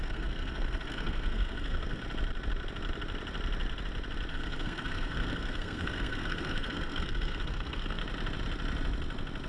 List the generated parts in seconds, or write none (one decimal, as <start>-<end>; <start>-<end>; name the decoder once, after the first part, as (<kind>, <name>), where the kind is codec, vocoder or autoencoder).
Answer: 0.0-2.0 (codec, SNAC); 4.3-8.0